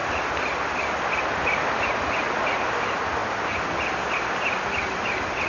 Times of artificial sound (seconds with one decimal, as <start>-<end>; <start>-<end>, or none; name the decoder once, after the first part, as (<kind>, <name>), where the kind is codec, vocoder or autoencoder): none